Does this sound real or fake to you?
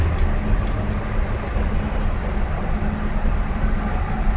real